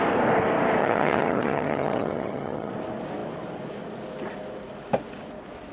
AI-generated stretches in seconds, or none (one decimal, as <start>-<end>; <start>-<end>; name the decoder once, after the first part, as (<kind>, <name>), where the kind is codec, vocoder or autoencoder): 0.8-2.7 (vocoder, HiFi-GAN)